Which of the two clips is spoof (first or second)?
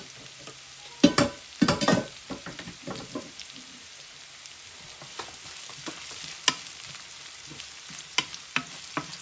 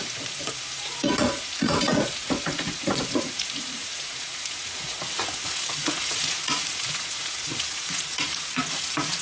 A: second